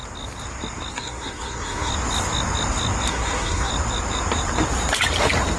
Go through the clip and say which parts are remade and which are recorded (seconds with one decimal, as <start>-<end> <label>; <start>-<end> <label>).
0.0-0.9 recorded; 0.9-1.9 remade; 1.9-3.1 recorded; 3.1-3.7 remade; 3.7-5.6 recorded